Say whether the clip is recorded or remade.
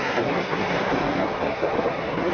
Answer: remade